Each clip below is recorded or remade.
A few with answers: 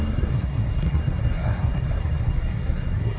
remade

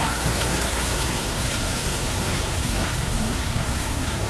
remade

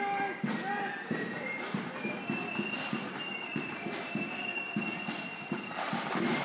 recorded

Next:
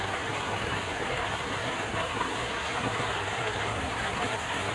remade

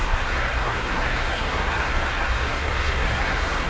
remade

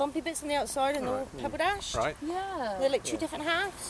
recorded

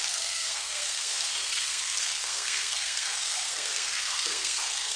remade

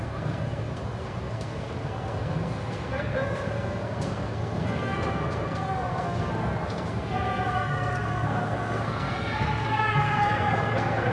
remade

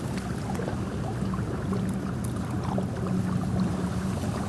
recorded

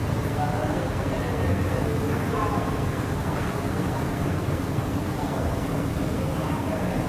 remade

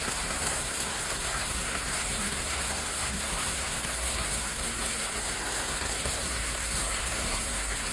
remade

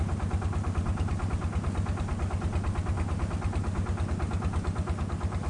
recorded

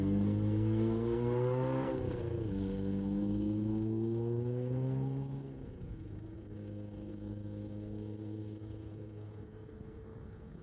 remade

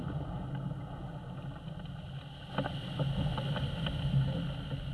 recorded